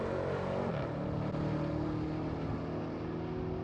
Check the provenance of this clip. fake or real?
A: real